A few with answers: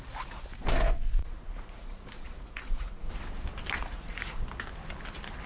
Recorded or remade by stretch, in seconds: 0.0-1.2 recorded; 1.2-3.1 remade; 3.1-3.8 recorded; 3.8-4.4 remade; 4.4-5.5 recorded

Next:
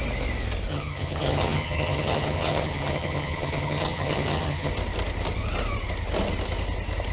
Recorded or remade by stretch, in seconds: 0.0-0.7 recorded; 0.7-4.7 remade; 4.7-7.1 recorded

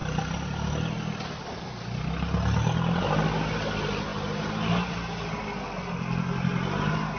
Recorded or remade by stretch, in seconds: 0.0-7.2 recorded

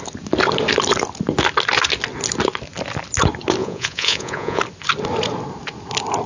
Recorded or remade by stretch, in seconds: 0.0-3.6 recorded; 3.6-4.6 remade; 4.6-6.3 recorded